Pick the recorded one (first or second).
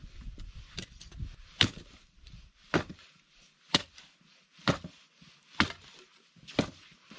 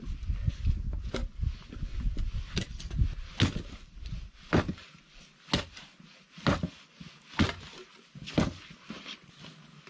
second